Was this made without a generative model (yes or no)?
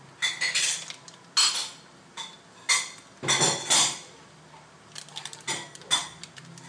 yes